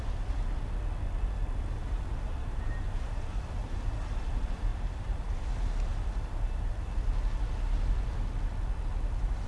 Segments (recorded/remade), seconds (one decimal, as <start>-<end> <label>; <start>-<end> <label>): 0.0-1.8 recorded; 1.8-3.2 remade; 3.2-4.7 recorded; 4.7-5.5 remade; 5.5-9.5 recorded